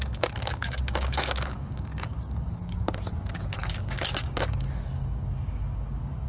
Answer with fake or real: fake